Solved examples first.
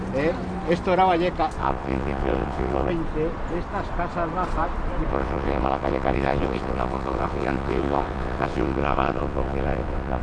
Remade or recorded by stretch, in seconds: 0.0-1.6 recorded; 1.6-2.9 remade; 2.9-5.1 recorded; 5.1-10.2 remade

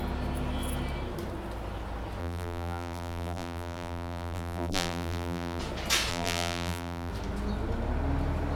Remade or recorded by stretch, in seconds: 0.0-2.2 recorded; 2.2-5.6 remade; 5.6-6.1 recorded; 6.1-7.1 remade; 7.1-8.5 recorded